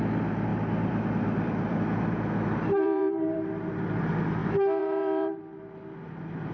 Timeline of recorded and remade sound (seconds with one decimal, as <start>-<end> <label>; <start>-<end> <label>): 0.0-0.5 recorded; 0.5-4.0 remade; 4.0-4.4 recorded; 4.4-5.4 remade; 5.4-6.5 recorded